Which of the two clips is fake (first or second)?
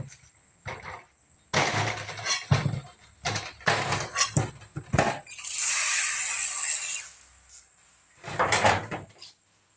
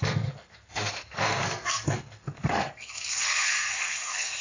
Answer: second